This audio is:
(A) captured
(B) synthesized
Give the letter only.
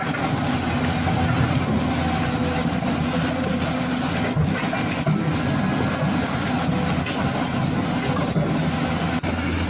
A